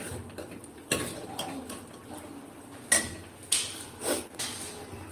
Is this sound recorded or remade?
recorded